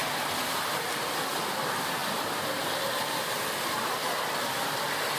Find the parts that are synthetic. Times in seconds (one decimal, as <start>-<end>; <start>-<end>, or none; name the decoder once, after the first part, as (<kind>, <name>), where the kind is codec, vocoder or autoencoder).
none